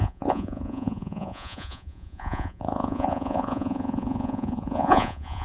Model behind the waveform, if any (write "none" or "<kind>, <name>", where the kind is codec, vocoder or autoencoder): vocoder, Vocos